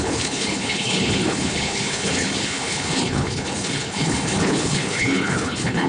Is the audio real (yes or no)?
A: no